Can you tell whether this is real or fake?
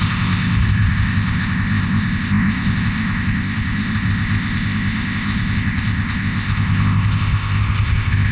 fake